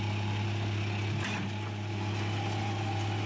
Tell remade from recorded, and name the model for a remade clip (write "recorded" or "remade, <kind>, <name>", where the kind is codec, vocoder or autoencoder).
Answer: recorded